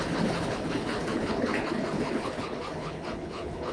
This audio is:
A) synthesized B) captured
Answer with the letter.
A